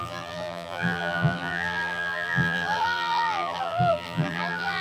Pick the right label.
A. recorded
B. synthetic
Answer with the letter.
B